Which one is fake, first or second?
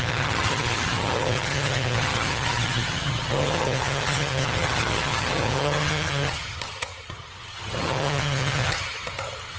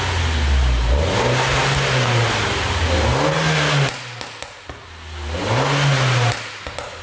first